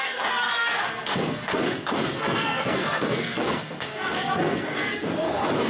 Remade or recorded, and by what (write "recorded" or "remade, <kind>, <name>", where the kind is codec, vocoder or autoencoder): remade, codec, SNAC